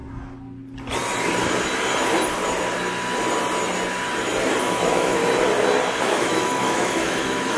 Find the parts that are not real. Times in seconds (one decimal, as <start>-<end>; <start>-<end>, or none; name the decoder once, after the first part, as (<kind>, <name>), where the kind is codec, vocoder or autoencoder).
4.6-5.2 (autoencoder, DAC-VAE); 6.0-7.6